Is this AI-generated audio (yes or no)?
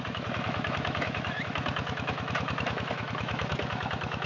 yes